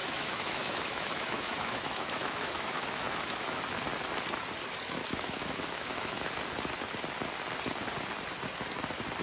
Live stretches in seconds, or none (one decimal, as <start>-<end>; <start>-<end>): 3.6-5.1; 6.3-9.2